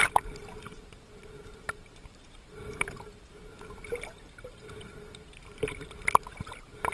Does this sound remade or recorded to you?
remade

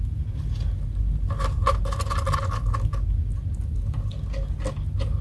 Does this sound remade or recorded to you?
recorded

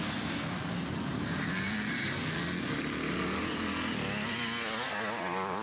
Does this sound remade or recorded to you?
recorded